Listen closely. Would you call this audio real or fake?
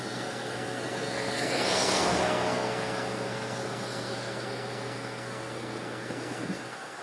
fake